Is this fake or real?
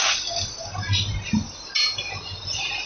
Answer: real